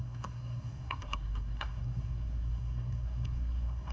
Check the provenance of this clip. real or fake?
fake